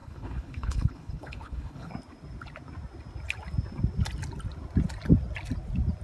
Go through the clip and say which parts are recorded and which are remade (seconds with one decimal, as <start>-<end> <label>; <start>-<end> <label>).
0.0-1.9 remade; 1.9-6.0 recorded